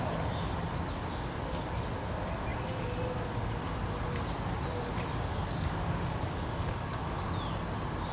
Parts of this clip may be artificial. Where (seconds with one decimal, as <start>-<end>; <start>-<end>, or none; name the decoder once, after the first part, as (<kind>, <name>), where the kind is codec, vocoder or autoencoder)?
5.3-7.3 (codec, DAC)